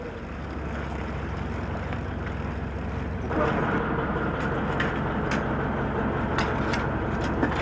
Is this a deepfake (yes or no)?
no